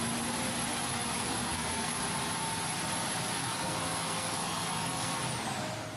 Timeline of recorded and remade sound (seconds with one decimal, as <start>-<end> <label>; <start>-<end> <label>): 0.0-1.1 recorded; 1.1-2.0 remade; 2.0-3.4 recorded; 3.4-5.2 remade; 5.2-6.0 recorded